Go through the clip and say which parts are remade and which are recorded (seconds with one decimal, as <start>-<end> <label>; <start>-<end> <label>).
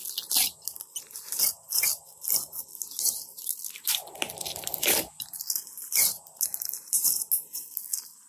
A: 0.0-8.3 recorded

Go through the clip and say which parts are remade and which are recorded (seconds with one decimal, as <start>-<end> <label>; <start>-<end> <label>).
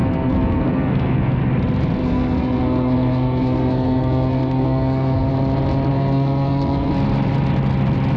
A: 0.0-1.4 remade; 1.4-2.0 recorded; 2.0-5.3 remade; 5.3-5.9 recorded; 5.9-6.9 remade; 6.9-8.2 recorded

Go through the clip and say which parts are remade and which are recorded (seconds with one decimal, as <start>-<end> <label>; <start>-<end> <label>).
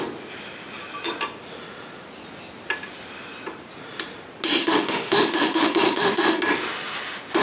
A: 0.0-4.6 recorded; 4.6-6.4 remade; 6.4-7.4 recorded